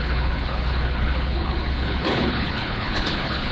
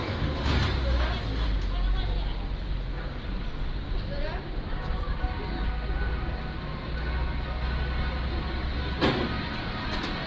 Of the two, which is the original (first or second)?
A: second